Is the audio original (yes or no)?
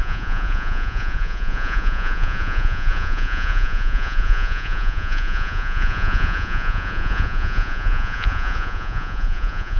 no